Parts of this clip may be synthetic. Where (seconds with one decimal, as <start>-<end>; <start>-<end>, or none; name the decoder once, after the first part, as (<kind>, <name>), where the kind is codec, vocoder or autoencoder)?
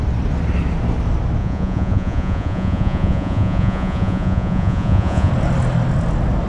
1.4-5.3 (vocoder, Vocos)